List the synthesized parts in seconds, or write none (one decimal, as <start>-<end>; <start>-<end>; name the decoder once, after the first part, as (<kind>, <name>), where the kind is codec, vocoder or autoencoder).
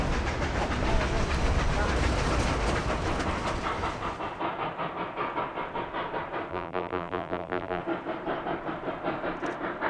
6.5-7.8 (vocoder, BigVGAN v2)